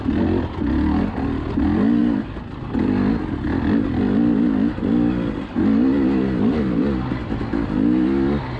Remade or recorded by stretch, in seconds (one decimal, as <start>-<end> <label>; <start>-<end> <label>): 0.0-8.6 recorded

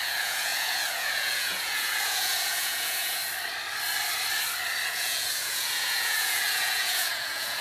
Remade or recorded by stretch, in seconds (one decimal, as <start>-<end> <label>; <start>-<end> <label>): 0.0-3.2 remade; 3.2-4.9 recorded; 4.9-7.6 remade